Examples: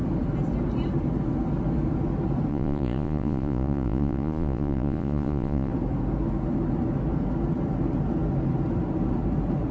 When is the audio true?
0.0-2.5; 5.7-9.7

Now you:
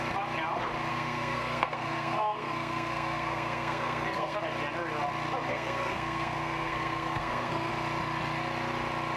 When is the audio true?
0.0-0.9; 4.4-5.5; 7.7-9.2